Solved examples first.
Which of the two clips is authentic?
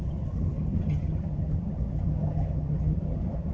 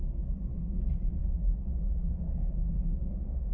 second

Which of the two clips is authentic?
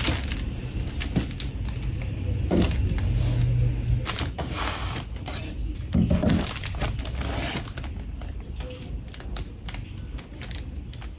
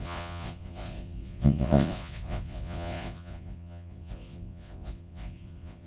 first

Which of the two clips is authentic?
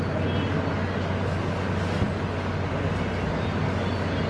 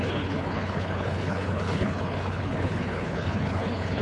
first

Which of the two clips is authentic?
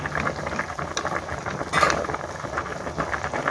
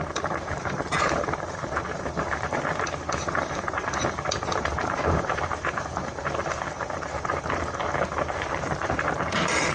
first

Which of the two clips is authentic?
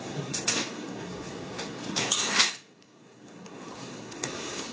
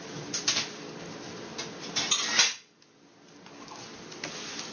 second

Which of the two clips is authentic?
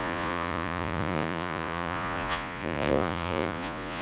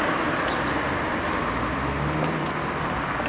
second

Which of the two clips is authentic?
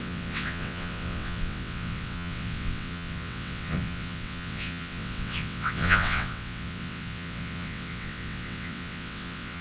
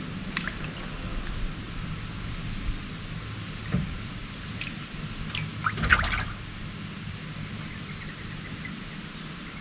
second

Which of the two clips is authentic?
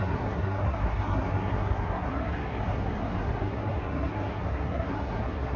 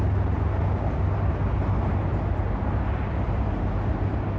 second